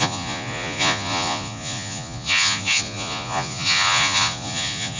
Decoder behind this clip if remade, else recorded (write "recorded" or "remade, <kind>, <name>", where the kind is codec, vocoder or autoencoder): remade, vocoder, Vocos